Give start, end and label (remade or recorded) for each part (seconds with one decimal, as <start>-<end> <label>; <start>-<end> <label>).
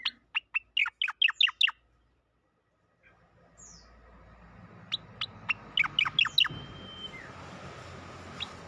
0.0-8.7 recorded